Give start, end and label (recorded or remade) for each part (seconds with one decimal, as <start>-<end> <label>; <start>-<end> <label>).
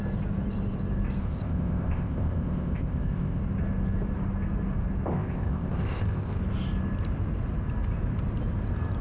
0.0-1.2 recorded; 1.2-3.4 remade; 3.4-5.1 recorded; 5.1-6.4 remade; 6.4-9.0 recorded